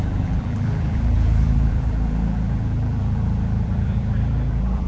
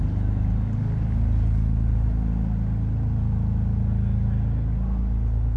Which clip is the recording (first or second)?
second